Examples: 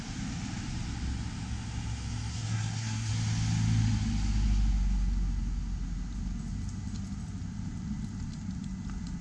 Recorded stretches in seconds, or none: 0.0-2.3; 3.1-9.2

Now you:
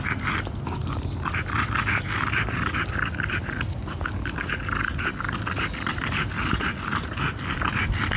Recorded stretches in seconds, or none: 0.0-8.2

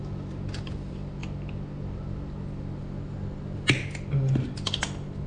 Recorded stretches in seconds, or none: 0.0-5.3

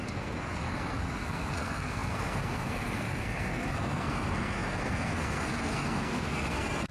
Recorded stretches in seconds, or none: none

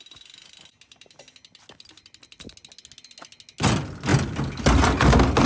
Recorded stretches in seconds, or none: 0.0-5.5

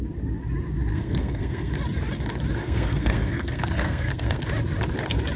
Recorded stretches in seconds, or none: 0.0-0.9; 1.7-2.6; 4.5-5.4

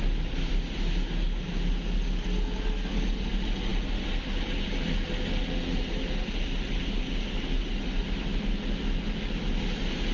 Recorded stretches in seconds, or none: 0.0-10.1